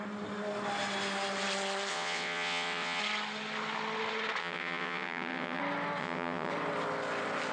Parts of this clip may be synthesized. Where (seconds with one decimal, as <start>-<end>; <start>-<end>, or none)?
1.9-3.0; 4.4-5.6; 6.0-6.5